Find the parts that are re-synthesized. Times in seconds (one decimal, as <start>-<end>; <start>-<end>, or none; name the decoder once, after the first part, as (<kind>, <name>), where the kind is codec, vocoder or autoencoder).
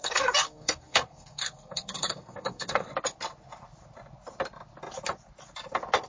0.0-2.9 (codec, SNAC)